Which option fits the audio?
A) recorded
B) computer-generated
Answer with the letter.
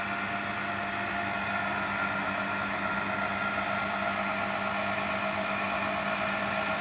A